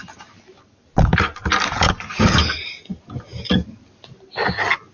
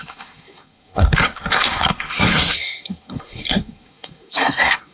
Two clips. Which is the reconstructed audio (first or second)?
second